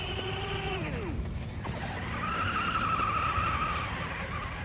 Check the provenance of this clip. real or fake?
real